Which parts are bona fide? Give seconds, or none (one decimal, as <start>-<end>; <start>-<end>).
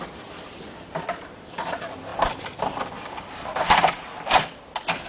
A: none